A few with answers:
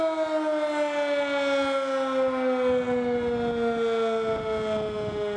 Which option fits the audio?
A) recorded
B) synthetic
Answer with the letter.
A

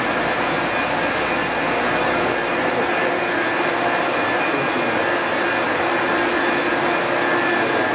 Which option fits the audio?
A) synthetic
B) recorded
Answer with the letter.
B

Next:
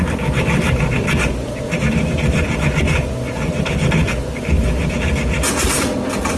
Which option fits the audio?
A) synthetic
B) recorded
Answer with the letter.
A